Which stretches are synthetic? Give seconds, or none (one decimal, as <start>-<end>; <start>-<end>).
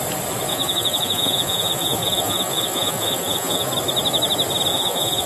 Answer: 0.5-3.7; 4.7-5.3